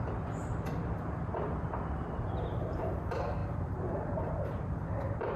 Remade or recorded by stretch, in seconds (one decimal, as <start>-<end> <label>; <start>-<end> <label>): 0.0-0.4 remade; 0.4-1.5 recorded; 1.5-5.4 remade